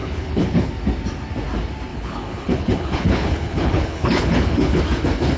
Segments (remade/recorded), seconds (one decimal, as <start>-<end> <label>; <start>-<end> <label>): 0.0-0.7 remade; 0.7-1.9 recorded; 1.9-4.8 remade; 4.8-5.4 recorded